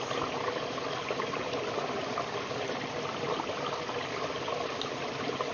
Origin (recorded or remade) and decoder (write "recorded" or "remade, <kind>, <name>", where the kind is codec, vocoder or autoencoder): recorded